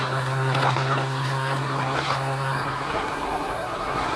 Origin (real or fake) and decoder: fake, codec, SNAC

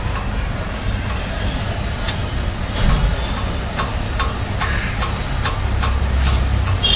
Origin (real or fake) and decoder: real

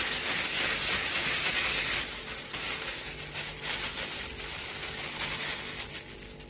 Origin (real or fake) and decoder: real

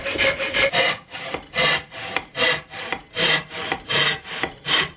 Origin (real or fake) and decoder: fake, vocoder, BigVGAN v2